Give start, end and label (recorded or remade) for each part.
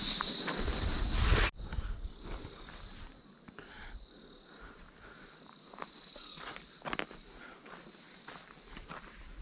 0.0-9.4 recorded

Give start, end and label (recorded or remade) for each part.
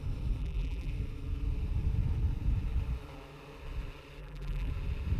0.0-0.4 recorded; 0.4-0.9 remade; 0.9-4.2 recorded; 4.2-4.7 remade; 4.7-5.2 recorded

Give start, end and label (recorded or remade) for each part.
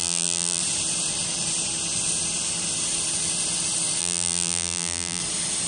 0.0-0.6 remade; 0.6-4.0 recorded; 4.0-5.2 remade; 5.2-5.7 recorded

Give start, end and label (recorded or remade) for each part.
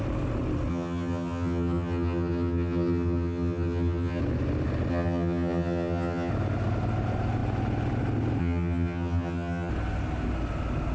0.0-0.7 recorded; 0.7-4.2 remade; 4.2-4.9 recorded; 4.9-6.3 remade; 6.3-8.4 recorded; 8.4-9.7 remade; 9.7-10.9 recorded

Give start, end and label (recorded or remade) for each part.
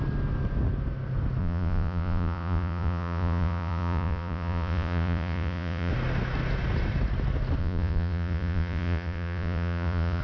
0.0-1.4 recorded; 1.4-5.9 remade; 5.9-7.6 recorded; 7.6-10.2 remade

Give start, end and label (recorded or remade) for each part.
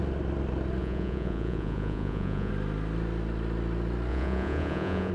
0.0-0.8 recorded; 0.8-2.5 remade; 2.5-4.1 recorded; 4.1-5.1 remade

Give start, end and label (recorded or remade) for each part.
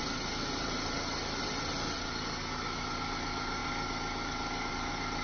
0.0-5.2 recorded